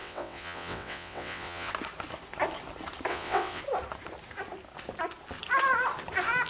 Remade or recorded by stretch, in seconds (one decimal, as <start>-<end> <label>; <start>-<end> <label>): 0.0-1.7 remade; 1.7-3.1 recorded; 3.1-3.6 remade; 3.6-6.5 recorded

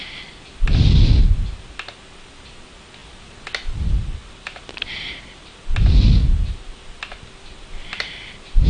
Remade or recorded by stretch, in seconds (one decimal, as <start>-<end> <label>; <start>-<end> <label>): 0.0-8.7 recorded

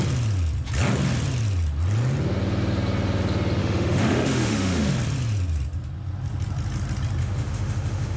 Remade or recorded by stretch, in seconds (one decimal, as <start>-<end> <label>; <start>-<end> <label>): 0.0-3.6 recorded; 3.6-4.9 remade; 4.9-7.2 recorded; 7.2-8.2 remade

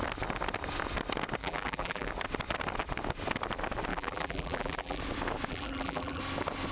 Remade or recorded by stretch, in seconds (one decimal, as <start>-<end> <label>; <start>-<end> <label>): 0.0-1.4 recorded; 1.4-2.1 remade; 2.1-3.9 recorded; 3.9-5.0 remade; 5.0-5.5 recorded; 5.5-6.2 remade; 6.2-6.7 recorded

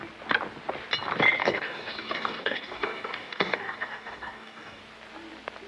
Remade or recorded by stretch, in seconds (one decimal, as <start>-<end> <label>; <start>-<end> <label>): 0.0-1.4 recorded; 1.4-4.8 remade; 4.8-5.7 recorded

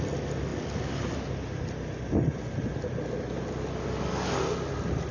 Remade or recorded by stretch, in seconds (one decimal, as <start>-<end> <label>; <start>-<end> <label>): 0.0-5.1 recorded

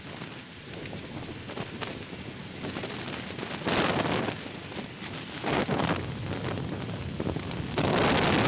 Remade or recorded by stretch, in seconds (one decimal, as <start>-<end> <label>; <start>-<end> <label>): 0.0-8.5 recorded